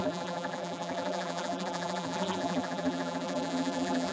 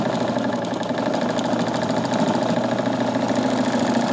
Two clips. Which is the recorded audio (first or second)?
second